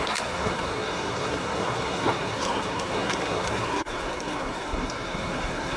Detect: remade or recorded remade